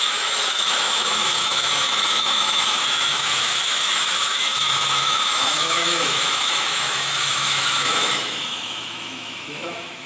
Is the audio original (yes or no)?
no